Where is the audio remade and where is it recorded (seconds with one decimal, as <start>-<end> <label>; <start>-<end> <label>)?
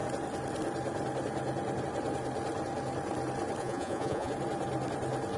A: 0.0-3.6 recorded; 3.6-4.3 remade; 4.3-5.4 recorded